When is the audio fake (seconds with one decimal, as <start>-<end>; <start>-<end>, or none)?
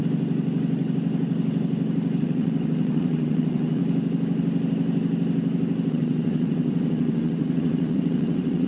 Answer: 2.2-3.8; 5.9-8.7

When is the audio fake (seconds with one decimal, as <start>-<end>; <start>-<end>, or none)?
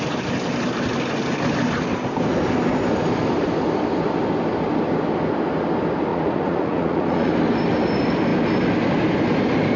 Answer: 6.1-7.3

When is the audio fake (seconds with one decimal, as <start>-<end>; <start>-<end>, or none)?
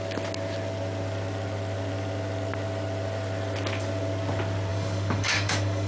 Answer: 4.7-5.9